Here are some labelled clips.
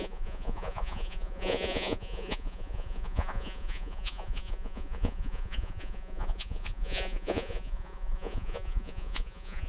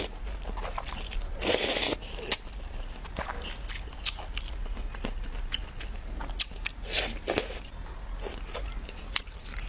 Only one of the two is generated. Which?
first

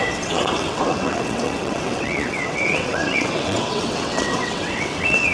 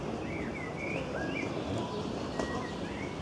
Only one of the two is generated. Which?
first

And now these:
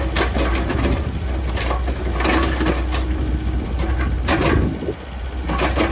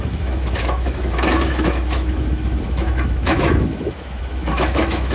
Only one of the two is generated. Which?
second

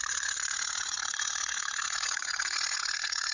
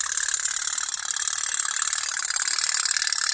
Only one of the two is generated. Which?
first